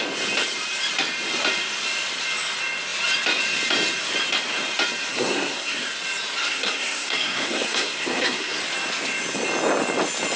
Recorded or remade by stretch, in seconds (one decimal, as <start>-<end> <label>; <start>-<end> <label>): 0.0-5.1 recorded; 5.1-5.9 remade; 5.9-6.4 recorded; 6.4-8.6 remade; 8.6-10.4 recorded

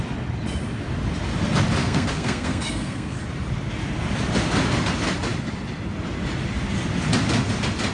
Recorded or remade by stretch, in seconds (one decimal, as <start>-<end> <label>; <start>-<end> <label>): 0.0-1.8 recorded; 1.8-3.2 remade; 3.2-7.9 recorded

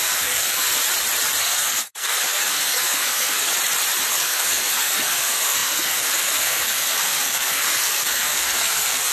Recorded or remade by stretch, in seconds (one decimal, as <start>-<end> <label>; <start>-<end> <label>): 0.0-0.8 remade; 0.8-1.4 recorded; 1.4-3.5 remade; 3.5-4.1 recorded; 4.1-9.1 remade

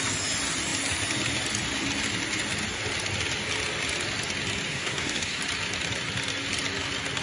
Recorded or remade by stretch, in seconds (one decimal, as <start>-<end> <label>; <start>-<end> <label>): 0.0-4.7 recorded; 4.7-5.4 remade; 5.4-7.2 recorded

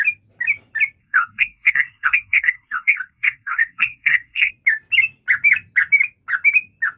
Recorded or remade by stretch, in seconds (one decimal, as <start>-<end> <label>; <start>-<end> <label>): 0.0-1.0 recorded; 1.0-4.5 remade; 4.5-7.0 recorded